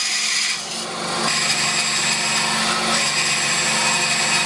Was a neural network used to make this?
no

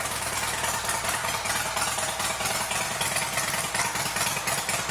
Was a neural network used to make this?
no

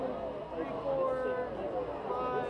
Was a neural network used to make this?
no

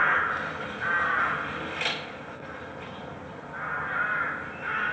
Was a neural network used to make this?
no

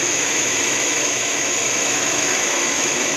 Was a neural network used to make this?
yes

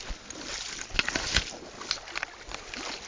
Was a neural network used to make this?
no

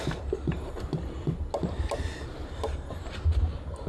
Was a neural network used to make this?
no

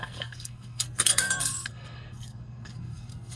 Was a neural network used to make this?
yes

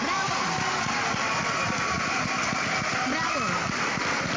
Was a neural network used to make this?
no